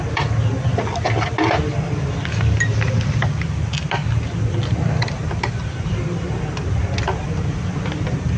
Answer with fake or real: real